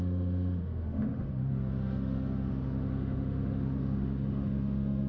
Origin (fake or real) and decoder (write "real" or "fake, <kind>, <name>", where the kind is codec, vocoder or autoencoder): fake, autoencoder, DAC-VAE